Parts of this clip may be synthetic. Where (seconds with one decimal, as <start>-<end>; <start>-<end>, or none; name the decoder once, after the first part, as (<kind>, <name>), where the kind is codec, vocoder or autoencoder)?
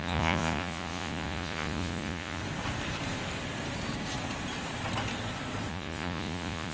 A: 0.0-2.4 (vocoder, Vocos); 5.7-6.7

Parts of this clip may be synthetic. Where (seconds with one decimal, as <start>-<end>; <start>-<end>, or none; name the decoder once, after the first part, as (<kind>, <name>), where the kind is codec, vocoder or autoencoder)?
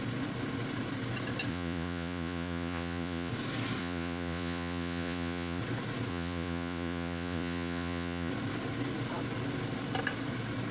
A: 1.5-3.3 (vocoder, Vocos); 3.8-5.6; 6.1-8.3